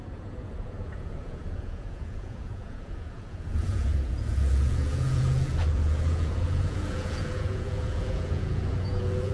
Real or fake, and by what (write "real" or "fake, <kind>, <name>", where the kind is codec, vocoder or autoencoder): fake, vocoder, Vocos